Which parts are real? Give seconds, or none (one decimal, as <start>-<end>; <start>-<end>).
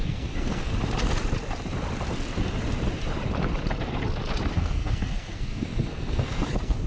0.7-4.5